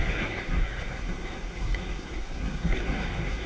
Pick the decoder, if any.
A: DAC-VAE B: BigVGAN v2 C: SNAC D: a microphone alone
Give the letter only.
C